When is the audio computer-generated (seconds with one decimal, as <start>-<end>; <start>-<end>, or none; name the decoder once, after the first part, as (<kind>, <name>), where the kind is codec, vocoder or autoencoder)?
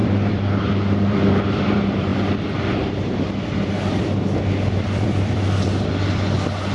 0.0-6.7 (vocoder, BigVGAN v2)